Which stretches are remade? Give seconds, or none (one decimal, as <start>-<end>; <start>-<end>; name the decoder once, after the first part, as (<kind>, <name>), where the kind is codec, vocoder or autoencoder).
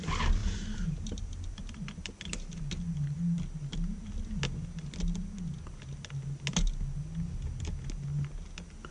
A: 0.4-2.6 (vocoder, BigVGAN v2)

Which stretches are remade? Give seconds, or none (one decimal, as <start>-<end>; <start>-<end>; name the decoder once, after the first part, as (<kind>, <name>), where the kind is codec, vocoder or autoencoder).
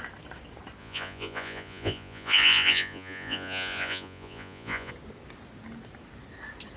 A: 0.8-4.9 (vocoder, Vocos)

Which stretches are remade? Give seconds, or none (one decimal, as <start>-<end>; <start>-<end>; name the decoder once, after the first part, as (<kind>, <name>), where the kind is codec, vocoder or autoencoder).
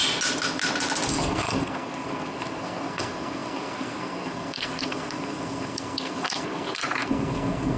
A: 1.1-7.8 (codec, SNAC)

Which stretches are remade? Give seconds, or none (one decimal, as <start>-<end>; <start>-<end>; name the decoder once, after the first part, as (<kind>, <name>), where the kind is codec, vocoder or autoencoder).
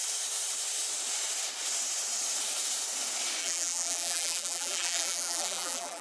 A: 3.4-6.0 (vocoder, BigVGAN v2)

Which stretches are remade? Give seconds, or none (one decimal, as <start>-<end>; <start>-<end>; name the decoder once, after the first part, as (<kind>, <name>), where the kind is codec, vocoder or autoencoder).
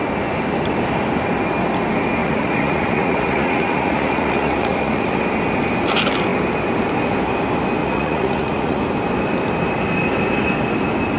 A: 2.2-5.2 (vocoder, Vocos); 7.8-8.8